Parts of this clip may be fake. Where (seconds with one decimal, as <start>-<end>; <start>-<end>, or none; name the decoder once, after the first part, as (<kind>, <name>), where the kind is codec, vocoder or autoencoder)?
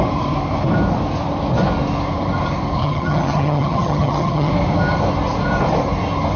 2.8-4.5 (vocoder, HiFi-GAN)